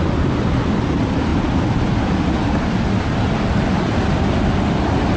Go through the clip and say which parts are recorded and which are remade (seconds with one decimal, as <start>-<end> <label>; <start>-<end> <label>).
0.0-5.2 recorded